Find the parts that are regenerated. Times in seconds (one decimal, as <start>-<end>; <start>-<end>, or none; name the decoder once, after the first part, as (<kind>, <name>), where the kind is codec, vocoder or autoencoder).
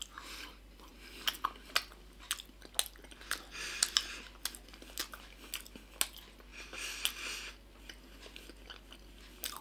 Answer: none